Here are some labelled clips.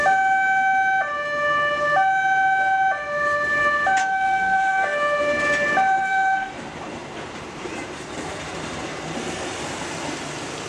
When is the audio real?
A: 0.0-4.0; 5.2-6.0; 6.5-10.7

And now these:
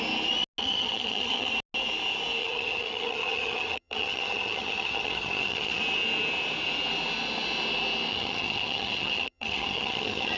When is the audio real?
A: 0.0-0.6; 1.5-2.4; 5.8-8.1

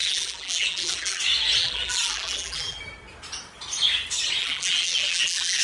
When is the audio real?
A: 1.2-1.6; 2.8-4.4